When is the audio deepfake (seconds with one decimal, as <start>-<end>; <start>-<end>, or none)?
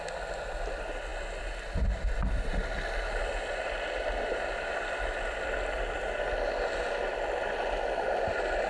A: none